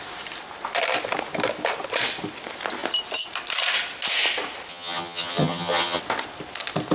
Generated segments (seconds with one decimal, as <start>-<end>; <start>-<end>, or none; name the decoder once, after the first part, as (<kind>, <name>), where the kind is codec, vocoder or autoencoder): 4.7-6.0 (vocoder, HiFi-GAN)